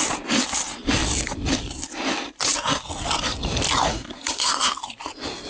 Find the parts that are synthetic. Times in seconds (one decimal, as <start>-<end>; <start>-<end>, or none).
3.9-4.7